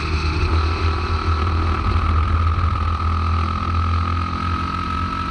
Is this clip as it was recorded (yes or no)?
yes